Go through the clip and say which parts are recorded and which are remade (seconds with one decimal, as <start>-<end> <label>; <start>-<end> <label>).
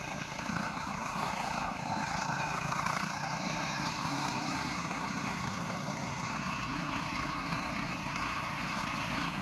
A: 0.0-9.4 remade